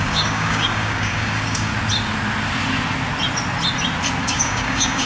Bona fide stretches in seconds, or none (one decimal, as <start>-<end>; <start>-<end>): 1.7-4.2